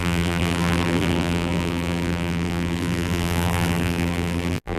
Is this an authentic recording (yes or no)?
no